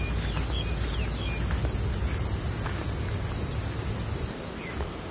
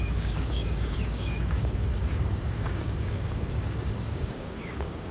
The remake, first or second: second